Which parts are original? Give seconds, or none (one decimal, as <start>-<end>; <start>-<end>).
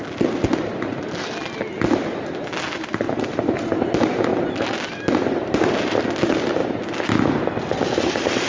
0.0-8.5